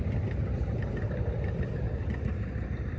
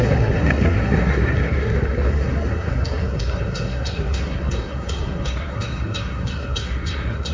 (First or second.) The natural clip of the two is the first